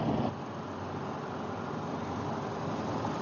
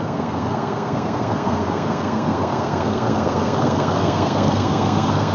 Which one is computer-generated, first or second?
second